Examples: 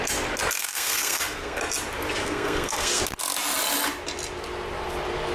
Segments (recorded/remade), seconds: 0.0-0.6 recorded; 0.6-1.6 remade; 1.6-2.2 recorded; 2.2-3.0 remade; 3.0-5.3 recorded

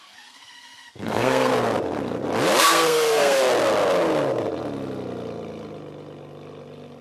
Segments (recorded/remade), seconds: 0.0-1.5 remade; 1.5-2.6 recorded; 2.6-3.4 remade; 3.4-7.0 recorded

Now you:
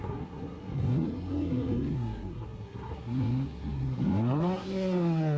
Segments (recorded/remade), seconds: 0.0-5.4 remade